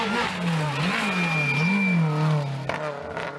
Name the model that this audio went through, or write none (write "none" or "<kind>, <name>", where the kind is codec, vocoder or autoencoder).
none